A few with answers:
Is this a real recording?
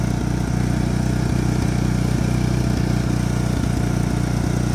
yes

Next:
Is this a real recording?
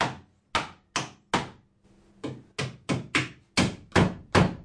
yes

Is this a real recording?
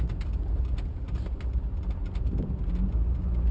yes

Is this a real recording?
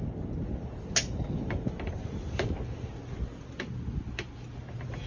yes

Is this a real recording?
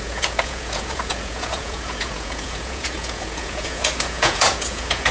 no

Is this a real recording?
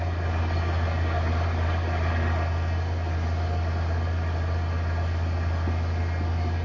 yes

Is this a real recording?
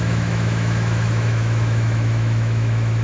no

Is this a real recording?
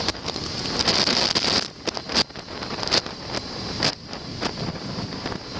yes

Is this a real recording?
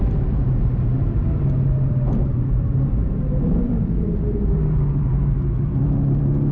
no